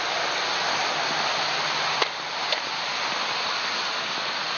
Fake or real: real